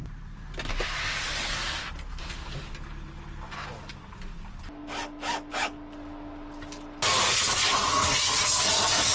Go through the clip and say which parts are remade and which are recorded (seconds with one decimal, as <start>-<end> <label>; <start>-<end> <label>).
0.0-9.1 recorded